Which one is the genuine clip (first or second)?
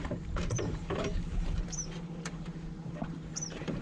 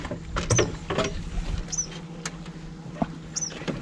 second